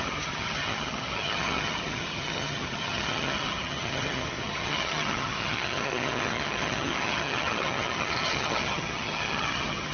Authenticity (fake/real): fake